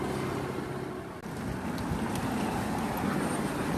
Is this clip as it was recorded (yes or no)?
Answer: yes